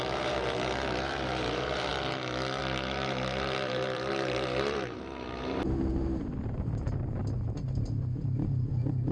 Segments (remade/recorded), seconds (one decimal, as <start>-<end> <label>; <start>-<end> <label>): 0.0-1.9 remade; 1.9-2.6 recorded; 2.6-7.2 remade; 7.2-8.7 recorded; 8.7-9.1 remade